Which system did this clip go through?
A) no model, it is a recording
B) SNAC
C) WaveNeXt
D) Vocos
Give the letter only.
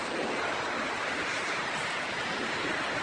A